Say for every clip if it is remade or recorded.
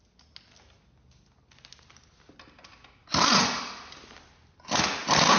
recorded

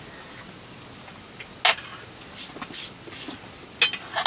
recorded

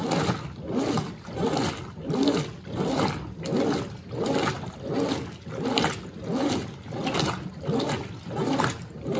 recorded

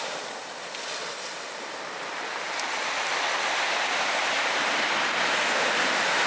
recorded